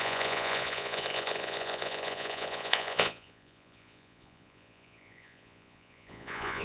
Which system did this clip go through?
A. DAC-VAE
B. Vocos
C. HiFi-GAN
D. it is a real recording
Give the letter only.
B